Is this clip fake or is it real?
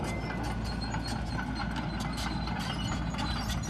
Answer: real